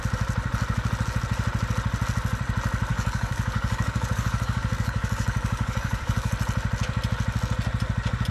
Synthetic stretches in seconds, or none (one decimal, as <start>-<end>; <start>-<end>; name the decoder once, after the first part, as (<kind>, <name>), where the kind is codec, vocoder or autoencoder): 2.9-6.3 (codec, DAC)